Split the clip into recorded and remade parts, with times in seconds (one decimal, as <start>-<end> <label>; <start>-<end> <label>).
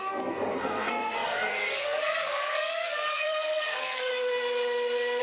0.0-4.1 remade; 4.1-5.2 recorded